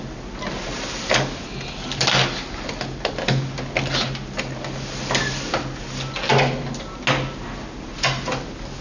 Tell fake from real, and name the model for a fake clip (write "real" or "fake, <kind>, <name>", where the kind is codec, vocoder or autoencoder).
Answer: real